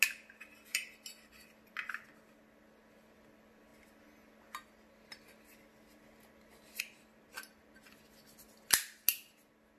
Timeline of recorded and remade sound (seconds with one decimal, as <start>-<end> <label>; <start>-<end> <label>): 0.0-0.7 recorded; 0.7-1.3 remade; 1.3-9.8 recorded